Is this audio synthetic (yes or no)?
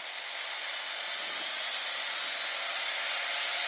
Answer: no